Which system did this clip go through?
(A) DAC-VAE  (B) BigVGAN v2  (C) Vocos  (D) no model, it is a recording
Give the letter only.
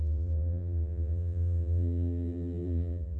B